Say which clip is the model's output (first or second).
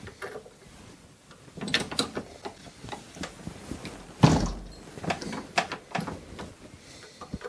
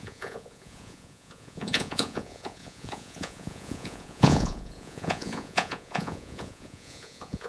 second